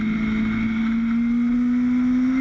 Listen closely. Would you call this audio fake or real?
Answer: real